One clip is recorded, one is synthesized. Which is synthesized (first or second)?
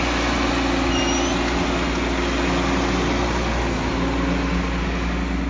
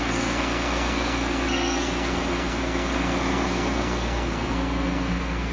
second